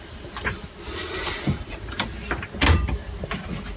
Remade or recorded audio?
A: recorded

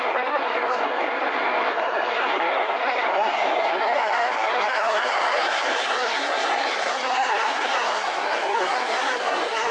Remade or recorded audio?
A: remade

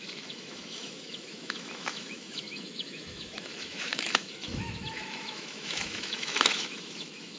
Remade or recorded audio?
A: remade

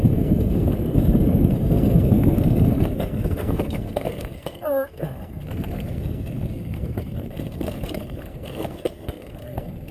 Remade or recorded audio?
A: remade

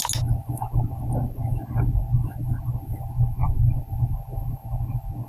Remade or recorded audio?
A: recorded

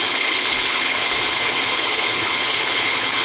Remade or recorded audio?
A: remade